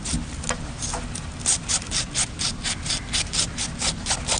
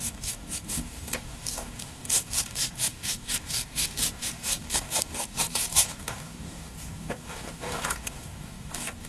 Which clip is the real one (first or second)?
first